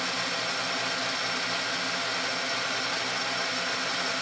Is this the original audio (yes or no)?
yes